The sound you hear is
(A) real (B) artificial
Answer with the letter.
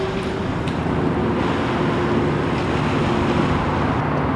A